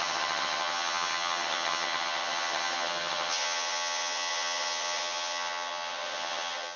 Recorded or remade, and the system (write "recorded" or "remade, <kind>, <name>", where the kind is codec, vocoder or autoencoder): remade, vocoder, HiFi-GAN